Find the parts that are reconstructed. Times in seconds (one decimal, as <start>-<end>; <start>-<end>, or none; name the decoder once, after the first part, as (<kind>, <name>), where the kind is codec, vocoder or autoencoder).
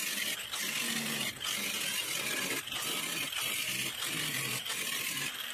3.3-5.5 (vocoder, BigVGAN v2)